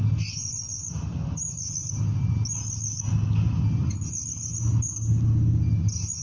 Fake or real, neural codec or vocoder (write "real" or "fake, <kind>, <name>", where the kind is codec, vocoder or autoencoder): real